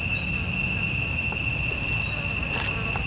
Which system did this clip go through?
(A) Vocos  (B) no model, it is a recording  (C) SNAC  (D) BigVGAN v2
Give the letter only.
B